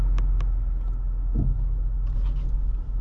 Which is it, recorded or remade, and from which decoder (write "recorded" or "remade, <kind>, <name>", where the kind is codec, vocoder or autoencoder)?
recorded